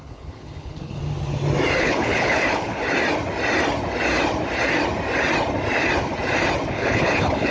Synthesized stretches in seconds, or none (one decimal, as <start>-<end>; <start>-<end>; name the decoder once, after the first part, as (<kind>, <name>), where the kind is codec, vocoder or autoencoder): 0.0-1.0 (codec, HILCodec); 1.8-2.8; 6.7-7.5

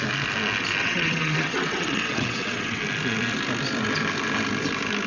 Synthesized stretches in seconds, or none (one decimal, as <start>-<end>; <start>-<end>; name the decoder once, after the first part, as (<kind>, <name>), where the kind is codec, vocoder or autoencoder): 0.8-2.8 (vocoder, WaveNeXt)

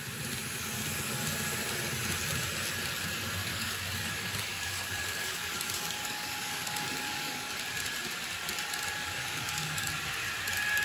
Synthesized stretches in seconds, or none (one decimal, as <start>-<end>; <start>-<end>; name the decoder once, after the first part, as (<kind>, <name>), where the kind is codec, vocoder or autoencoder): 3.5-7.6 (codec, DAC); 9.0-9.9

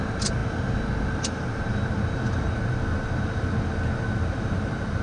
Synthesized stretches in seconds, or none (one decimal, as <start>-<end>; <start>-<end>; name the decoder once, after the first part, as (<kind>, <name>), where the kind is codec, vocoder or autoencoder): none

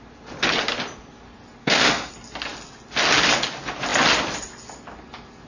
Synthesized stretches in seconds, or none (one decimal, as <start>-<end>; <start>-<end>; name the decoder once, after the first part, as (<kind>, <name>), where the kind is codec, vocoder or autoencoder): 1.6-2.1 (codec, SNAC)